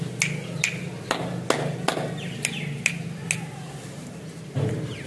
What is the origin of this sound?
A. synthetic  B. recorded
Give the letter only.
B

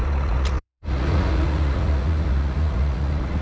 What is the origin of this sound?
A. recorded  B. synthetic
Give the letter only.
B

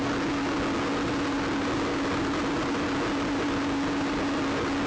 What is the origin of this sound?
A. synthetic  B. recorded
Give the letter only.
B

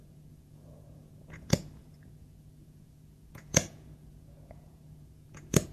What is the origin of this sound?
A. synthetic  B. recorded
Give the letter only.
A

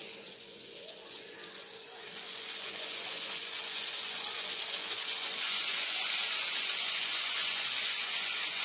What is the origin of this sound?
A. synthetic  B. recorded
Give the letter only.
A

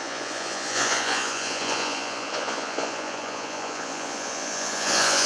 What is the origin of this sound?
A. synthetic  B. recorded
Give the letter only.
A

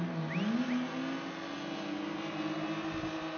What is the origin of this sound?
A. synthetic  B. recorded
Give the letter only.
B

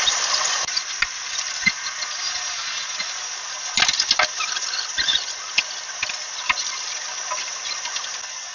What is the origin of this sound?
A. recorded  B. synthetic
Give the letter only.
A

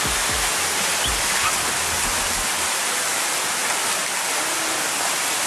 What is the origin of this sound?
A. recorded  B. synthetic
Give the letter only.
A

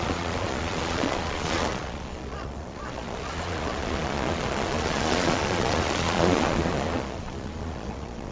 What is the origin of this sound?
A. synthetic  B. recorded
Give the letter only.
A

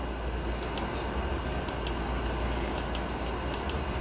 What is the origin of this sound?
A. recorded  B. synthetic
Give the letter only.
A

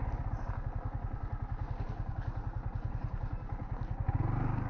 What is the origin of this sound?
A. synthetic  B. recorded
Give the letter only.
B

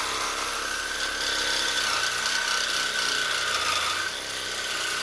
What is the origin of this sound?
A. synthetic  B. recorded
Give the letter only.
B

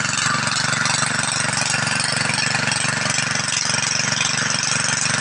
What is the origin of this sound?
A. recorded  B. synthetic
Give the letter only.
A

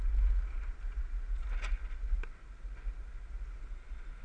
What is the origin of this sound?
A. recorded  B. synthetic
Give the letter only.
A